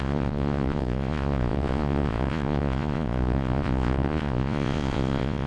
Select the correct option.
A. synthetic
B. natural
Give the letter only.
A